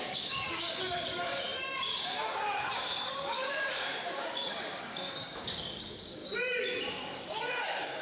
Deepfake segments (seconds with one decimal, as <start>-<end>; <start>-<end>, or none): 0.0-6.2; 6.9-8.0